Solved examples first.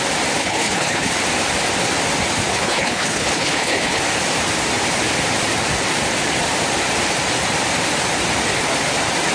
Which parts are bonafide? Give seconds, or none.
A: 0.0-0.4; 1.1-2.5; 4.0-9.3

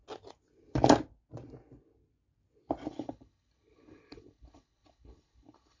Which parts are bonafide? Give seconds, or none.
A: 0.0-2.9

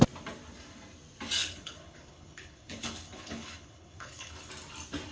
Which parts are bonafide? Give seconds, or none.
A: 0.0-1.4; 4.5-5.1